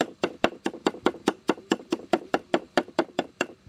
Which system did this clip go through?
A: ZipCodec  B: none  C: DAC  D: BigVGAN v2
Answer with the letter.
D